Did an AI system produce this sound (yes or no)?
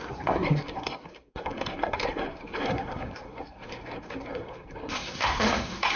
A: yes